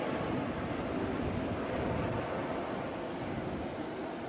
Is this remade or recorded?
recorded